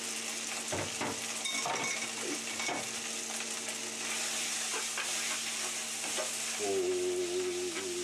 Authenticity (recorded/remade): recorded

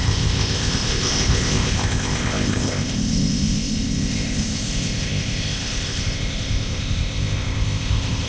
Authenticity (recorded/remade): remade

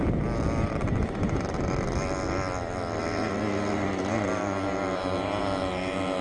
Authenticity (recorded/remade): recorded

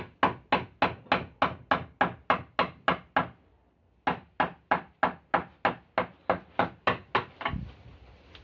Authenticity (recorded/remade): recorded